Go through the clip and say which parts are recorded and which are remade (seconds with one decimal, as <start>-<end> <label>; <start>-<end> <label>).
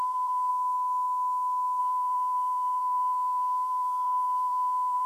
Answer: 0.0-0.5 remade; 0.5-1.8 recorded; 1.8-5.1 remade